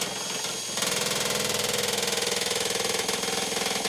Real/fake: real